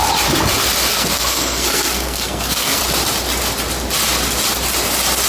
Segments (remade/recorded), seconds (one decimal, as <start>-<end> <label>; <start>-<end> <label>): 0.0-0.9 recorded; 0.9-2.8 remade; 2.8-5.3 recorded